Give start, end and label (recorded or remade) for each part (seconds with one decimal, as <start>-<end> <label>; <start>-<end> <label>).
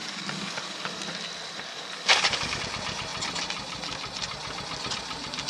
0.0-1.0 remade; 1.0-1.7 recorded; 1.7-2.6 remade; 2.6-5.5 recorded